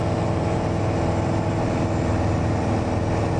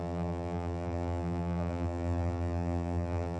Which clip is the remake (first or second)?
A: second